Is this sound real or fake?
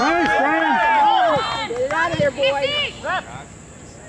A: real